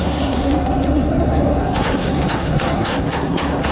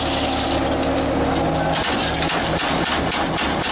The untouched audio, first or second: second